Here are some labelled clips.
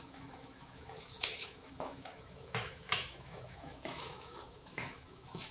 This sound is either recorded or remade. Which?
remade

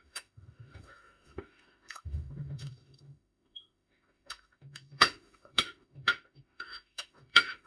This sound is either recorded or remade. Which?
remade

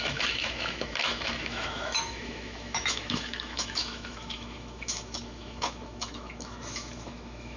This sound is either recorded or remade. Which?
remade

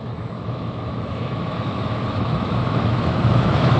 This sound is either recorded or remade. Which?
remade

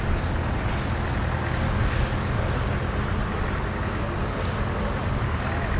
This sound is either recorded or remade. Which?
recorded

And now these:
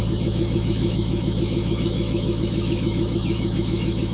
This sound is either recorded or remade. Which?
remade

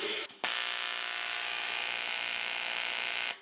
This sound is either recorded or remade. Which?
remade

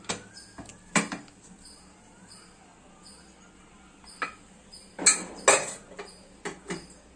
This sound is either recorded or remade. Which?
recorded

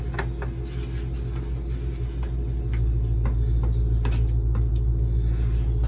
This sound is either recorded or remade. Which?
recorded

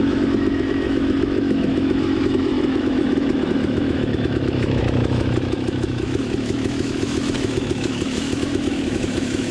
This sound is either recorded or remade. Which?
remade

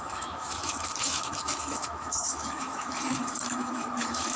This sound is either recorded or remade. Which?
remade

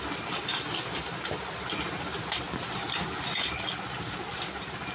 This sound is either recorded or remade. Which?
recorded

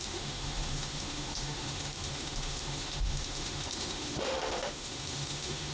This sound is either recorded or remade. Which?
remade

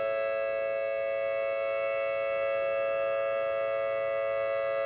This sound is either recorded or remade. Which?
recorded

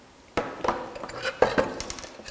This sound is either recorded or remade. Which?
recorded